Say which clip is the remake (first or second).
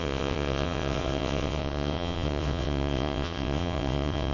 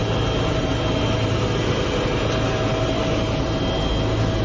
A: first